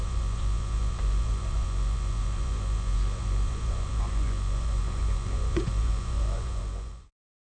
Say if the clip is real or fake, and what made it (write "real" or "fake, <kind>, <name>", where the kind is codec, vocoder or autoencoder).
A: fake, vocoder, Vocos